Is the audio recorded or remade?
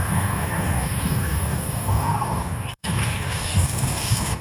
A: remade